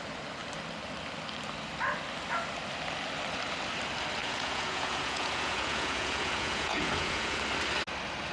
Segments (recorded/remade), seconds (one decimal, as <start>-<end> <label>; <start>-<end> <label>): 0.0-4.2 recorded; 4.2-7.4 remade; 7.4-8.3 recorded